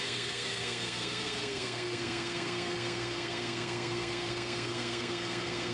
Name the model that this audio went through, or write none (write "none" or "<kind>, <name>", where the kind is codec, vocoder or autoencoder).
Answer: codec, SNAC